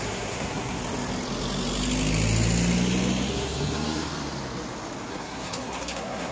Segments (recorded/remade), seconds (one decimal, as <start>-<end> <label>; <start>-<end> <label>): 0.0-0.8 remade; 0.8-3.3 recorded; 3.3-4.1 remade; 4.1-5.1 recorded; 5.1-6.3 remade